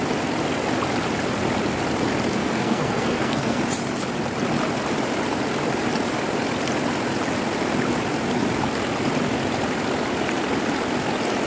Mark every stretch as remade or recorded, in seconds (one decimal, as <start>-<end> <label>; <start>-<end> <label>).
0.0-2.4 recorded; 2.4-3.6 remade; 3.6-11.5 recorded